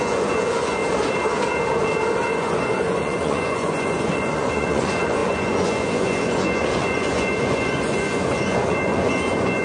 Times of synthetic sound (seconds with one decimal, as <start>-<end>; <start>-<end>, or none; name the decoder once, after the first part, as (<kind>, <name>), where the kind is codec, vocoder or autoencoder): 0.0-0.8 (vocoder, Vocos); 2.3-9.6